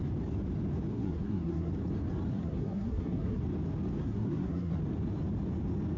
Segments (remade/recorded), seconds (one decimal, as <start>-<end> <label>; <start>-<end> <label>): 0.0-0.9 recorded; 0.9-1.7 remade; 1.7-2.3 recorded; 2.3-3.4 remade; 3.4-4.0 recorded; 4.0-4.8 remade; 4.8-6.0 recorded